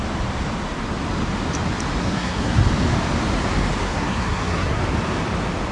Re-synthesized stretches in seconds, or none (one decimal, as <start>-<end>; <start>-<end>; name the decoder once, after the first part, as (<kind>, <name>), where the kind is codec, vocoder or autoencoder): 2.0-2.6 (codec, SNAC); 3.8-4.8